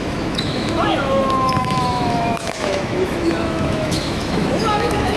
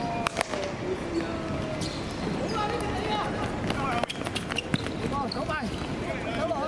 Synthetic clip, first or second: first